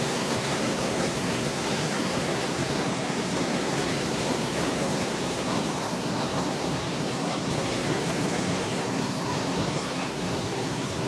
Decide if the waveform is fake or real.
fake